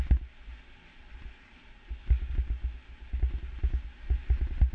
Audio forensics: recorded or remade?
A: recorded